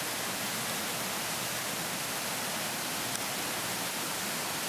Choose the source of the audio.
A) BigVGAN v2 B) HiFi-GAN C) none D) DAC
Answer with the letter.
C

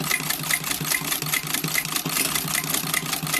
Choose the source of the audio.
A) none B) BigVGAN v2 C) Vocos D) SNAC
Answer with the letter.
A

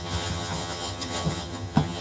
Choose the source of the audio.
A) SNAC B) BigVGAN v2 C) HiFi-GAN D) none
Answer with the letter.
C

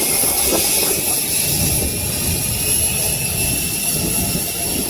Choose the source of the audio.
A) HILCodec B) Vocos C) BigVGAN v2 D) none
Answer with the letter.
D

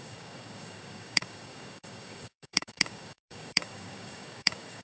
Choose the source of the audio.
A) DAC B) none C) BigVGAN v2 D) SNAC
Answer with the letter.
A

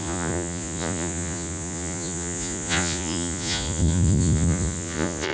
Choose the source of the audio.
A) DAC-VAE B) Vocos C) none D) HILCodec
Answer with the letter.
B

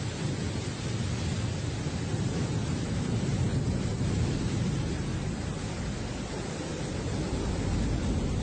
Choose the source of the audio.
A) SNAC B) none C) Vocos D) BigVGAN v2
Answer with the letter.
B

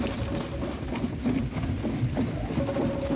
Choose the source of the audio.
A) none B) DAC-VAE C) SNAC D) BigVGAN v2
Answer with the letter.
A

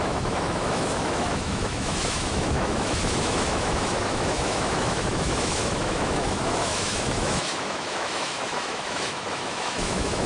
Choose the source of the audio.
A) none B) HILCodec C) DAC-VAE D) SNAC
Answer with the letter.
C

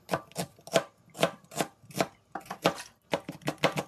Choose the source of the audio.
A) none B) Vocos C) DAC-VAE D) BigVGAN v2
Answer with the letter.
A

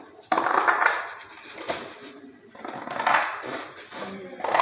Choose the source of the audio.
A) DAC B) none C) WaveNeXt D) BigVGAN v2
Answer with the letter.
D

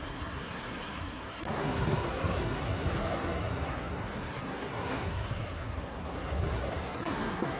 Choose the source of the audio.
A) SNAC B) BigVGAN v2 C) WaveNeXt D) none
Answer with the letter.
A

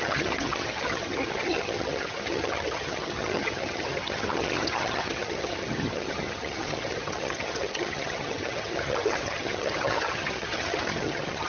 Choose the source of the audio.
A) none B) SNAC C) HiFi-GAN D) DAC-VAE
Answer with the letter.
C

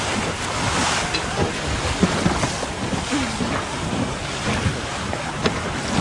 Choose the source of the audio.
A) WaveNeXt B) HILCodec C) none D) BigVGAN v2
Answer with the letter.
C